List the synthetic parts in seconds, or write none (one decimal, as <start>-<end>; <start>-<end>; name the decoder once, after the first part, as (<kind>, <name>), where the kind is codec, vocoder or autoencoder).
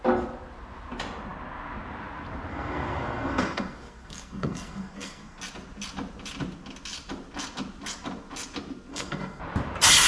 2.5-5.4 (codec, SNAC); 8.9-9.4